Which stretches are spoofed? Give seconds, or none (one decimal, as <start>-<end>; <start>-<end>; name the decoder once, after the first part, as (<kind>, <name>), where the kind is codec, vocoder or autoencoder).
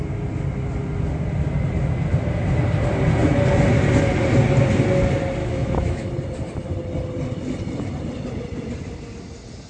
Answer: 5.4-6.1 (autoencoder, DAC-VAE)